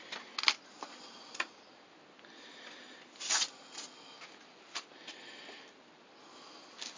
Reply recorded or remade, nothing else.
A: recorded